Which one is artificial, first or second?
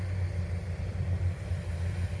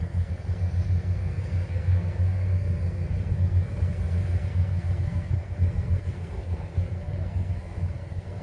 second